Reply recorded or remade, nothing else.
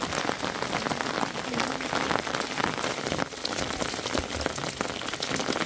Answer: recorded